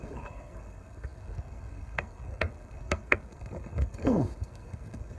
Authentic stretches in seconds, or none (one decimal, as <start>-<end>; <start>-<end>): none